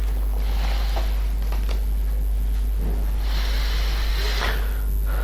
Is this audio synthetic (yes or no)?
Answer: no